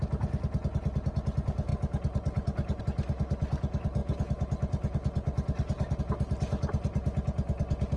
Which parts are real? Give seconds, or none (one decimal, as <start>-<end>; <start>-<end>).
0.0-8.0